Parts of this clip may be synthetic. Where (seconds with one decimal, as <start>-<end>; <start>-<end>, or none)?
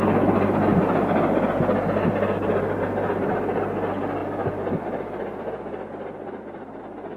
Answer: none